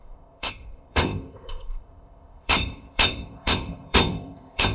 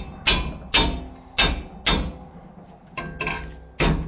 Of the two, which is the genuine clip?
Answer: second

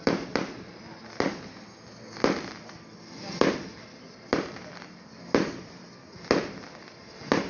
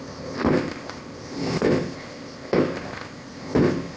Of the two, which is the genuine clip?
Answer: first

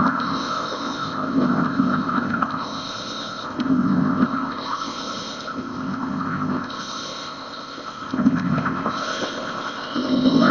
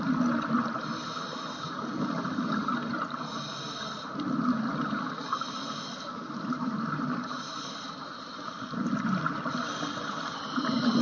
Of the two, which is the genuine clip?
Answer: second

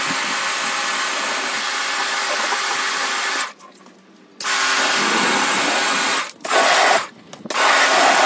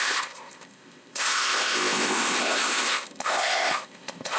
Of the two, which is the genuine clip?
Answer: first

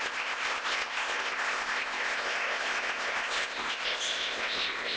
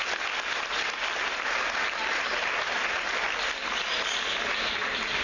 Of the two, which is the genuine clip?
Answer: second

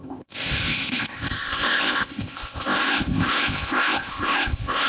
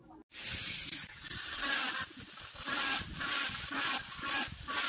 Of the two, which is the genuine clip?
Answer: second